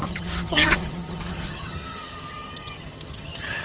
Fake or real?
fake